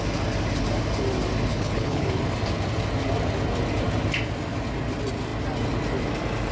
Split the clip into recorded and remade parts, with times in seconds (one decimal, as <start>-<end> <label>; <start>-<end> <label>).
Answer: 0.0-1.5 recorded; 1.5-2.2 remade; 2.2-6.5 recorded